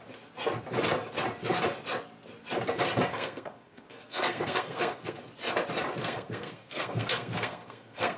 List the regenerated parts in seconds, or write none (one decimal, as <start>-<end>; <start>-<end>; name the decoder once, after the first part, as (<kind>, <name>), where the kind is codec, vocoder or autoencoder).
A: 3.1-5.2 (codec, SNAC); 6.0-8.2